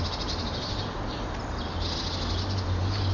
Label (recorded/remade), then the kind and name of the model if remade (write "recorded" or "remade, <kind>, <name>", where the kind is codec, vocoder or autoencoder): recorded